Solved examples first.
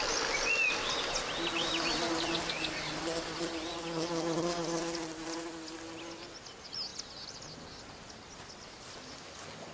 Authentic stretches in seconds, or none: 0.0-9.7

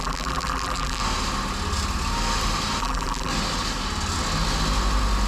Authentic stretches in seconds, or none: 1.0-2.8; 3.3-5.3

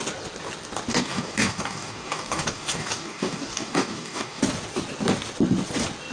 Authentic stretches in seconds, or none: 0.0-0.9; 4.4-6.1

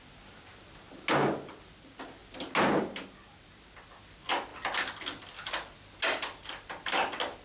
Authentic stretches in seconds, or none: 0.0-7.4